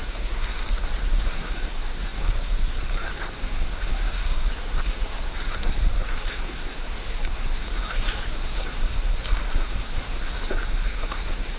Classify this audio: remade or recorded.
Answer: remade